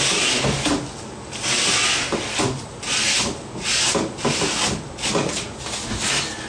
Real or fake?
real